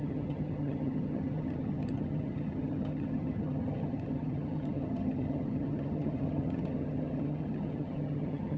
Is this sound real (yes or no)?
no